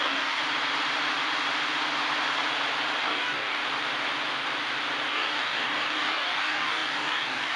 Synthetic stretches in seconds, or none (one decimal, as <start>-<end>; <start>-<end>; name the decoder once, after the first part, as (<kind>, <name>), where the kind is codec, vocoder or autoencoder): 0.0-0.4 (codec, DAC); 3.0-3.6; 5.1-7.6